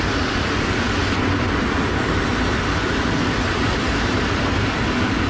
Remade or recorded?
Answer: recorded